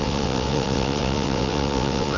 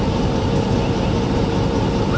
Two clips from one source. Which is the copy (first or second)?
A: first